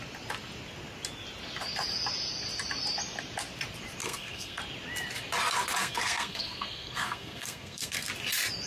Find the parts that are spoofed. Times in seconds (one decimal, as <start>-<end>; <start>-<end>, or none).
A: 4.0-4.6; 5.8-8.1

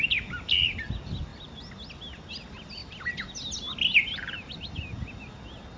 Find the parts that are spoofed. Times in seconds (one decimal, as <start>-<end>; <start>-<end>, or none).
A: none

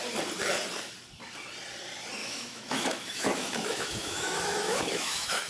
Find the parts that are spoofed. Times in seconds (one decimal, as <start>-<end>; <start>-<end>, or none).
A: 2.2-5.5

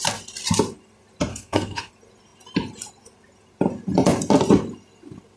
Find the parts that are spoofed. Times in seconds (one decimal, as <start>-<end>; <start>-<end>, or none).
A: 1.3-1.9

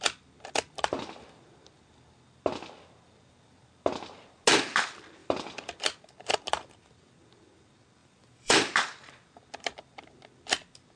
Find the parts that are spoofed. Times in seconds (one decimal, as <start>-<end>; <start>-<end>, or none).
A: 5.2-5.7; 8.0-8.7